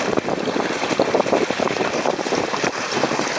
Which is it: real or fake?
fake